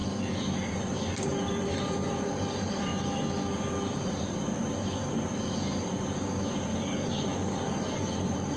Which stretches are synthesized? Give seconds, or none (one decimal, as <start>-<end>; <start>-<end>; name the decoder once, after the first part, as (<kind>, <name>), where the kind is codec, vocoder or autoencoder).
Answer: 1.2-2.9 (vocoder, BigVGAN v2); 7.1-8.6

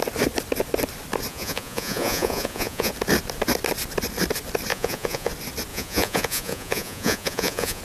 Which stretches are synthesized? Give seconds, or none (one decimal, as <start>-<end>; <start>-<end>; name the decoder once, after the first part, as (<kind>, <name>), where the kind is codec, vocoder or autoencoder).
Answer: 1.3-2.9 (vocoder, Vocos); 4.7-5.3; 5.7-7.8

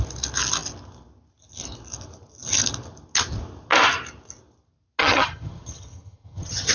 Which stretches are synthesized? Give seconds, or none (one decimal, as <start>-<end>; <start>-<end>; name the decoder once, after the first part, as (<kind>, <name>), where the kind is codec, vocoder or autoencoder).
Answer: 5.0-6.7 (vocoder, HiFi-GAN)

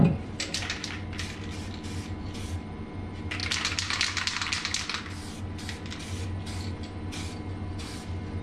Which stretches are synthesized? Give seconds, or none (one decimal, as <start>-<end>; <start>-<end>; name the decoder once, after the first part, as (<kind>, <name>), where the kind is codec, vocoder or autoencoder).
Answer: none

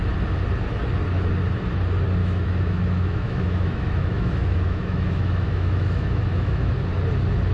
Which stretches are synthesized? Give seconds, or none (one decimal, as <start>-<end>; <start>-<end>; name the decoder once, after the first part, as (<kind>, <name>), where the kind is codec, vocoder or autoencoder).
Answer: 2.2-6.7 (autoencoder, DAC-VAE)

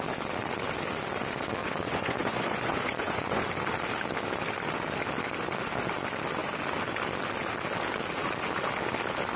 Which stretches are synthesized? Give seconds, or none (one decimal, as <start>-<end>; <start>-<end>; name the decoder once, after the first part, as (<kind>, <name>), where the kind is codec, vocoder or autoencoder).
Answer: 1.6-3.4 (vocoder, Vocos)

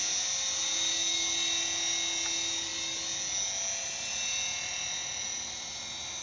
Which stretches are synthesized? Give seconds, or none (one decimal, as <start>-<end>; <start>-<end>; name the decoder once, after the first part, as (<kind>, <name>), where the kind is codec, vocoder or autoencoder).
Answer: none

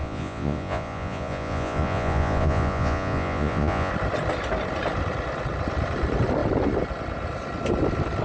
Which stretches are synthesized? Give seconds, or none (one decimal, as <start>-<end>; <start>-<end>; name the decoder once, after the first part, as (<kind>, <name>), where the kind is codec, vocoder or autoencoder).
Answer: 0.0-3.9 (vocoder, Vocos)